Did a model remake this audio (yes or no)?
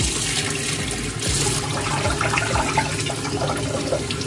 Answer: no